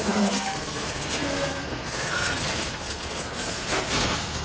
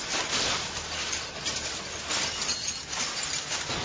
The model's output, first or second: first